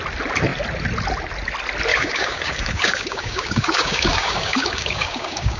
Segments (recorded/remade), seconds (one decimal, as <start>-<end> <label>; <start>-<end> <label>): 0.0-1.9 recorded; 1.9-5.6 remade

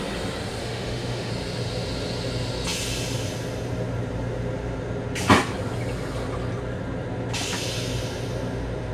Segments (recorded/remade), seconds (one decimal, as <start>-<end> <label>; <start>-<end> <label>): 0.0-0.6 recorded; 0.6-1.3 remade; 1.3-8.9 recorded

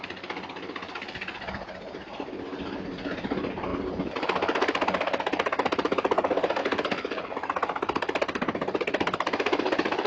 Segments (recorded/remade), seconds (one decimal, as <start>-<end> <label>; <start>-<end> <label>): 0.0-10.1 recorded

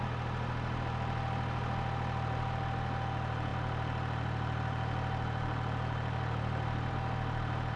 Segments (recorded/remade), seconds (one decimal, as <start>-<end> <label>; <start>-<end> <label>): 0.0-7.8 recorded

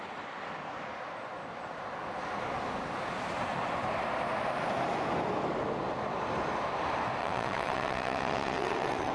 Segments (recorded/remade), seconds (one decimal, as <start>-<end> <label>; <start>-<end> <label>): 0.0-7.2 recorded; 7.2-9.1 remade

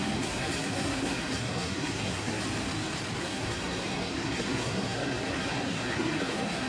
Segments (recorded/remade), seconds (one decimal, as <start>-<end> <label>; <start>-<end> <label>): 0.0-2.4 remade; 2.4-3.2 recorded; 3.2-6.7 remade